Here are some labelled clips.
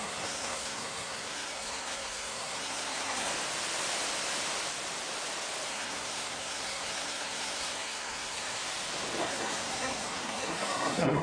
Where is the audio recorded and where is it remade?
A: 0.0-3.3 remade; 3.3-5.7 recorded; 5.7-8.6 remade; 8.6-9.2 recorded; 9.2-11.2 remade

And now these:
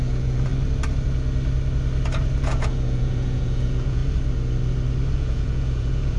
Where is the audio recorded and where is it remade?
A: 0.0-0.5 remade; 0.5-2.4 recorded; 2.4-4.0 remade; 4.0-5.1 recorded; 5.1-6.2 remade

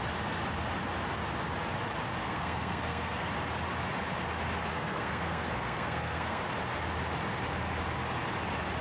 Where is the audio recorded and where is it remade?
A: 0.0-2.2 recorded; 2.2-3.3 remade; 3.3-4.7 recorded; 4.7-6.4 remade; 6.4-8.8 recorded